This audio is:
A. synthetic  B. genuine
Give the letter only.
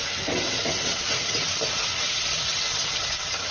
A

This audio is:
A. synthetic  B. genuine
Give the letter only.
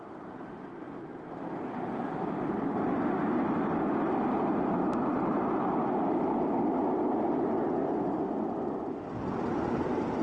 B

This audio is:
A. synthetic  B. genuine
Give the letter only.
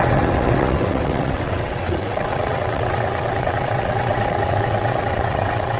A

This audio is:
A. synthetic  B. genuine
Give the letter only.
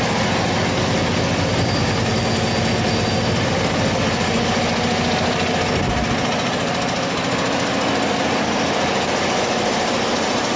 B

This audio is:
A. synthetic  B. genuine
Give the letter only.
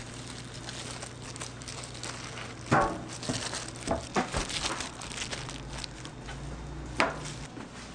B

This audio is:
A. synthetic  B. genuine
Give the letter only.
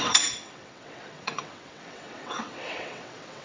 A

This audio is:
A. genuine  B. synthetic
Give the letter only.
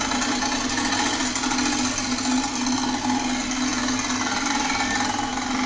A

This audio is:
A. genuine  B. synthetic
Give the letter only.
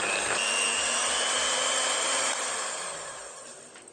A